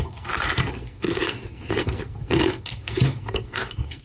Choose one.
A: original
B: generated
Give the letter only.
B